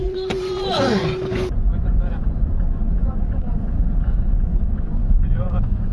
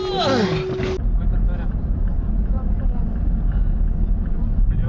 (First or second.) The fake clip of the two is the first